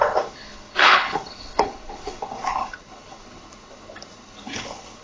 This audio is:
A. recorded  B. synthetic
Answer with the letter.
B